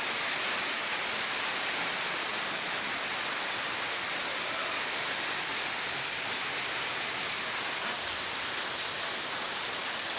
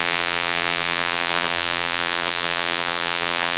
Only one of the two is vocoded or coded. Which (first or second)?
second